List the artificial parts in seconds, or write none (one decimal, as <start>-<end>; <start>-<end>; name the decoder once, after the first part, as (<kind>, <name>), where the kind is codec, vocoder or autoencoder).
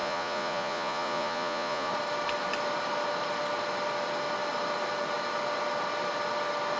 0.0-1.9 (vocoder, Vocos)